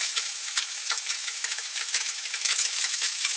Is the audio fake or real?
fake